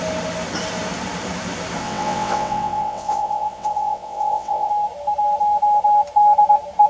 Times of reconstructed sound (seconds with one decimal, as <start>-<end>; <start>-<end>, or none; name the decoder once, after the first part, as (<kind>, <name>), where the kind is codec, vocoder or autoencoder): 1.8-4.7 (vocoder, WaveNeXt)